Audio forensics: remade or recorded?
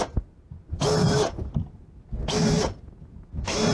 recorded